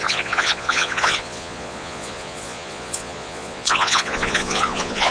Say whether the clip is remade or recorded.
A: remade